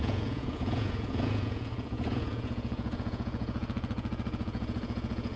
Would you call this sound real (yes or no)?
no